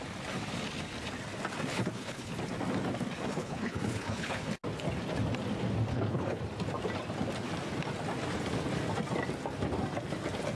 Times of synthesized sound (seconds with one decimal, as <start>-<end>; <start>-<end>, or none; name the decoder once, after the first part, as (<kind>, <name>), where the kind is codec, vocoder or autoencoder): 1.7-2.3 (codec, HILCodec); 3.3-4.5; 5.9-6.4